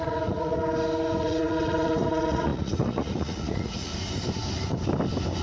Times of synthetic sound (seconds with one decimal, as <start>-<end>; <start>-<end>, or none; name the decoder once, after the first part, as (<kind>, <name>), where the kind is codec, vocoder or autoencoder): 0.0-0.6 (vocoder, Vocos); 1.2-3.9